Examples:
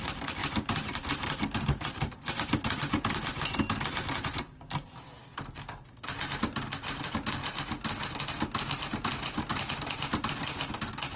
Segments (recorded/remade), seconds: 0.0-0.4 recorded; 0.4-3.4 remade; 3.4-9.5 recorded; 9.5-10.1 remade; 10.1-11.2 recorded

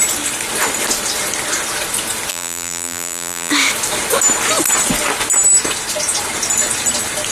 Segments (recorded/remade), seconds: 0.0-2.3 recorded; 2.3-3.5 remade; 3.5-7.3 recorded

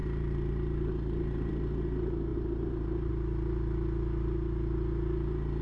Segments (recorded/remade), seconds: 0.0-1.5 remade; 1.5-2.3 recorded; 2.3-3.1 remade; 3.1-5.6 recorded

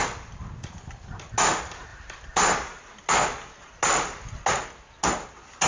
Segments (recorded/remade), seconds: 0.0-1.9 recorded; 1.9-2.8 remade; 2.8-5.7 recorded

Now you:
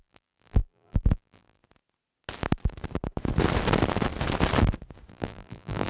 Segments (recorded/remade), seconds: 0.0-1.6 remade; 1.6-5.1 recorded; 5.1-5.9 remade

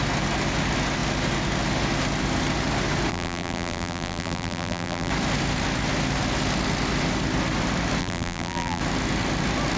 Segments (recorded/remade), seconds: 0.0-3.1 recorded; 3.1-5.1 remade; 5.1-8.0 recorded; 8.0-8.8 remade; 8.8-9.8 recorded

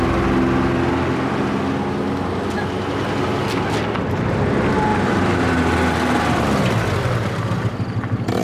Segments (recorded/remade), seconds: 0.0-4.9 recorded; 4.9-5.5 remade; 5.5-8.4 recorded

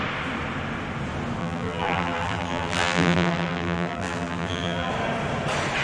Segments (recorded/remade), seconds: 0.0-1.4 recorded; 1.4-4.9 remade; 4.9-5.8 recorded